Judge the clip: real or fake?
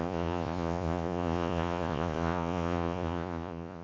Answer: fake